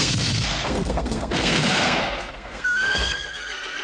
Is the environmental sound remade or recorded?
remade